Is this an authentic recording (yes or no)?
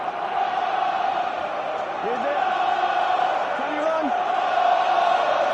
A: yes